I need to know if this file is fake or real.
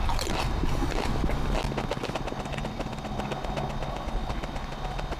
real